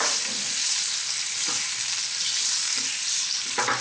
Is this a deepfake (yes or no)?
no